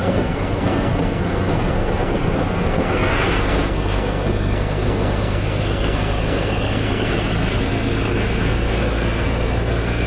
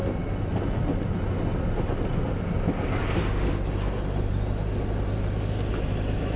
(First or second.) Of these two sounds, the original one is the second